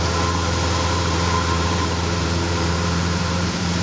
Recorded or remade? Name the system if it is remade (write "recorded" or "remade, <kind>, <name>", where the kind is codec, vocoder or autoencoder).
remade, vocoder, BigVGAN v2